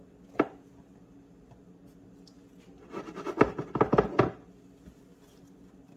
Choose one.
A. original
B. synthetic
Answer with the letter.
A